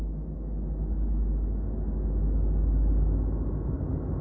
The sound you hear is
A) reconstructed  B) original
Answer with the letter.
B